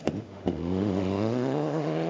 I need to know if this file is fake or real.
fake